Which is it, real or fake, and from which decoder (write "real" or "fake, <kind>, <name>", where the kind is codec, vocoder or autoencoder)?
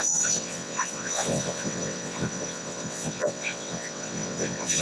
fake, vocoder, WaveNeXt